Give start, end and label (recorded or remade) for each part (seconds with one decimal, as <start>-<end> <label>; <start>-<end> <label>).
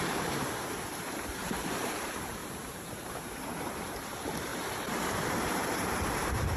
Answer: 0.0-4.5 remade; 4.5-5.4 recorded; 5.4-6.6 remade